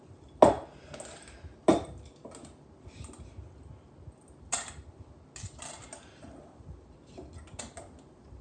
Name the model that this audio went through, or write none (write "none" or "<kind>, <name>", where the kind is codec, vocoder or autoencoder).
none